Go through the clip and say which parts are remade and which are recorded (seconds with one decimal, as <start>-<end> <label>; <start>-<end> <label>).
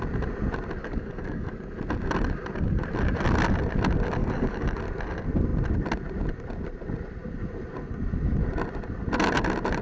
0.0-0.8 recorded; 0.8-1.5 remade; 1.5-4.2 recorded; 4.2-4.8 remade; 4.8-9.8 recorded